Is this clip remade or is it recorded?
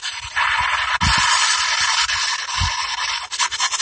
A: recorded